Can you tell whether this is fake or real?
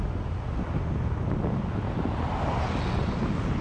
real